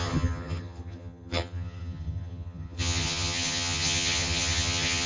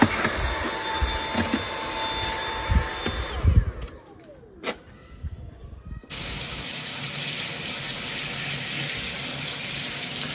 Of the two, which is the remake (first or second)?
first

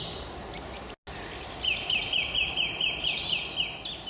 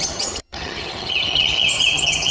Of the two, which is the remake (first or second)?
second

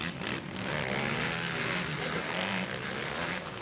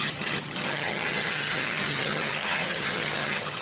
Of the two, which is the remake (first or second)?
second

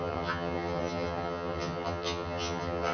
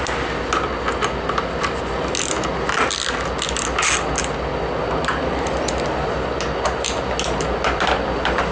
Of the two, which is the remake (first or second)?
first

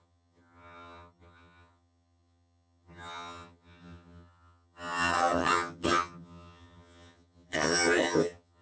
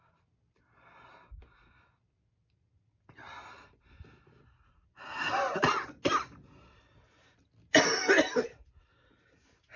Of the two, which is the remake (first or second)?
first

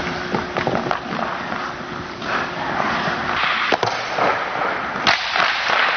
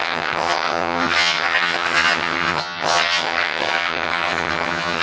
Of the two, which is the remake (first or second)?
second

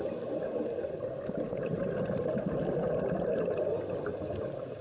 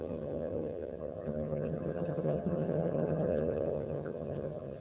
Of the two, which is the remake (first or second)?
second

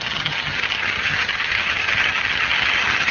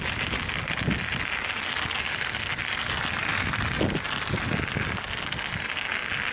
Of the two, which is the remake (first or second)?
first